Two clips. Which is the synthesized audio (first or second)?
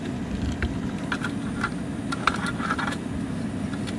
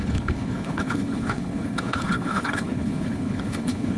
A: second